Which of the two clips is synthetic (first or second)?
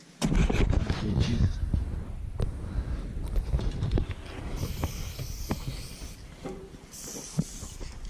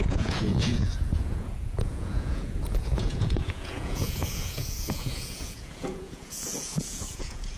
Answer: second